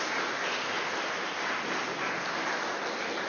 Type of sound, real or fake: real